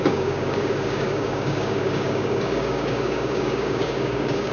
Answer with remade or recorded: remade